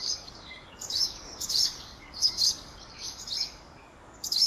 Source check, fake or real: fake